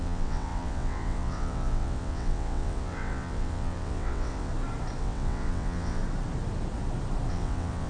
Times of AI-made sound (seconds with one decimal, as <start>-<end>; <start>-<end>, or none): 0.0-4.5; 5.0-6.0; 7.3-7.9